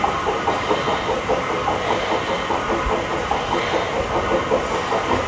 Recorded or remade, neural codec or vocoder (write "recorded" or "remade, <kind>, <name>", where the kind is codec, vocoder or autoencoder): recorded